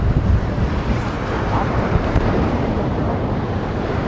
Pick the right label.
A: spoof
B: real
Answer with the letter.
A